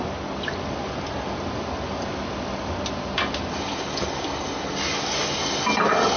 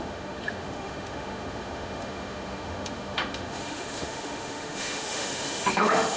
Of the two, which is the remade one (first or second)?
second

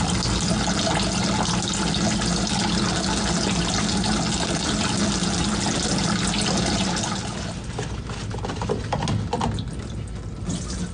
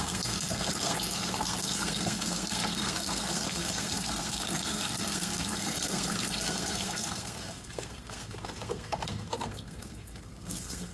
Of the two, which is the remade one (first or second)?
second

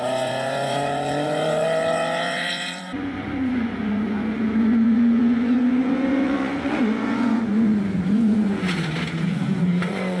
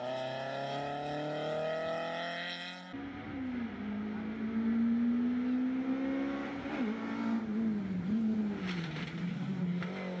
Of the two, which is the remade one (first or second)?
first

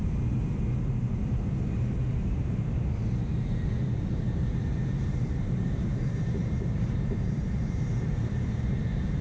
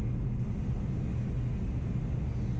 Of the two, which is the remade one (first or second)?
first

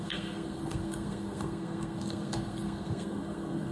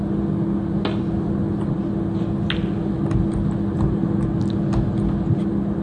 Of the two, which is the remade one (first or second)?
first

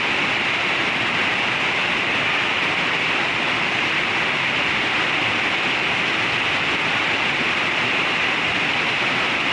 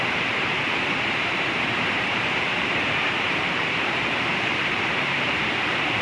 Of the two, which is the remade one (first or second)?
second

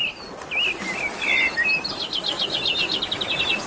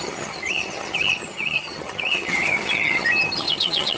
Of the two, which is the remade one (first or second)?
second